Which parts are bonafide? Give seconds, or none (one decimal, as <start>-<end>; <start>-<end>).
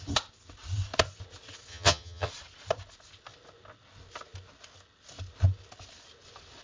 0.0-1.7; 2.3-6.6